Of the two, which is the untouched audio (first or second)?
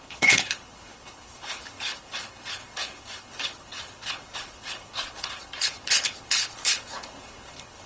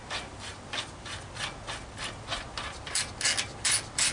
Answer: second